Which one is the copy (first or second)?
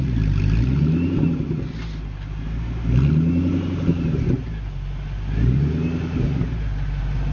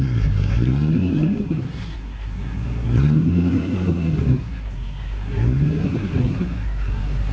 second